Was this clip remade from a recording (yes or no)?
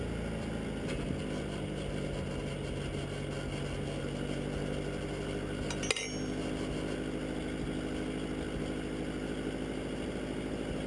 no